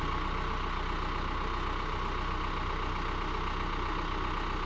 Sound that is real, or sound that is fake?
real